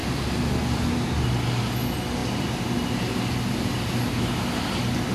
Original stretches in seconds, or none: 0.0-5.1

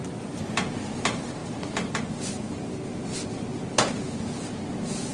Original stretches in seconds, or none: 0.0-5.1

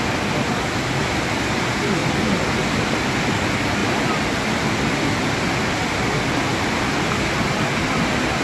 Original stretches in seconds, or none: 0.0-8.4

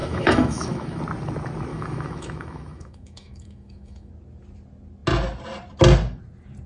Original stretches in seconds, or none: 1.0-1.7; 4.1-6.7

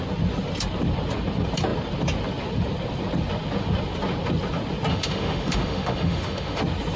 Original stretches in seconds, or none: 0.0-4.9; 6.6-7.0

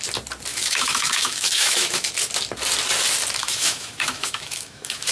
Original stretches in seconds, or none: 0.0-0.5; 2.1-3.4

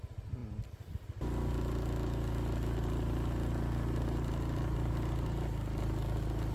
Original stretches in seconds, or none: 0.0-6.5